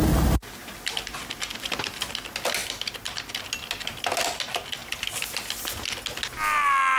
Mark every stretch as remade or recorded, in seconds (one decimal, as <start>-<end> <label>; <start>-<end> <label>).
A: 0.0-2.6 recorded; 2.6-3.3 remade; 3.3-4.8 recorded; 4.8-5.4 remade; 5.4-7.0 recorded